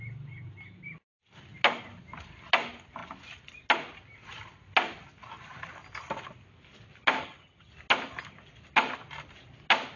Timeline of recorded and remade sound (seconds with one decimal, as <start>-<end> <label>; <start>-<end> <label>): 0.0-7.2 recorded; 7.2-7.7 remade; 7.7-10.0 recorded